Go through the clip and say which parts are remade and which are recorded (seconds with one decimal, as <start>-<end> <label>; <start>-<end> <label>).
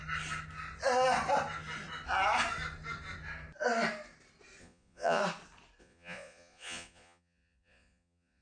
0.0-4.6 recorded; 4.6-5.2 remade; 5.2-5.8 recorded; 5.8-8.4 remade